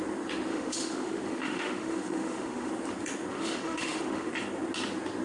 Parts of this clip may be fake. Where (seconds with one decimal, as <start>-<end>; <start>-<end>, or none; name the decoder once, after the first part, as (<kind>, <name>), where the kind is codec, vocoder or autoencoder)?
0.5-2.7 (autoencoder, DAC-VAE); 3.3-4.3